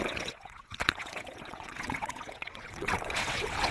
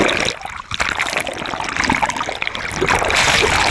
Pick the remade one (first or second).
first